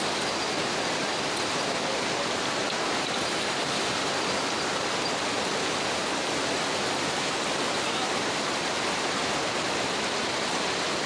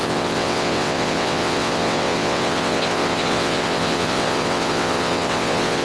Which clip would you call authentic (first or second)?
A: first